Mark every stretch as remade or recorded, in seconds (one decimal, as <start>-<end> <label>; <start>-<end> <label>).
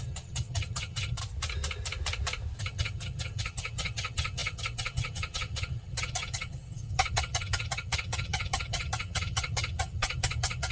0.0-1.2 remade; 1.2-2.6 recorded; 2.6-10.7 remade